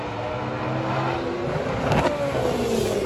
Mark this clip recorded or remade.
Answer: recorded